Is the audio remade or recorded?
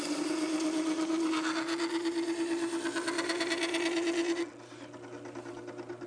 recorded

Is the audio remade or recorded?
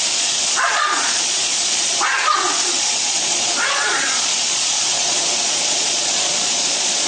remade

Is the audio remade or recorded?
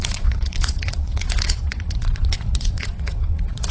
remade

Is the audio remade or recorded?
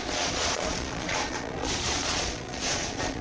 remade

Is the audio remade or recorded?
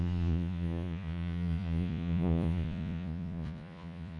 remade